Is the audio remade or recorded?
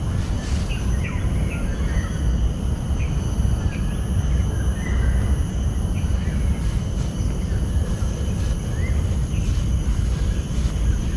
recorded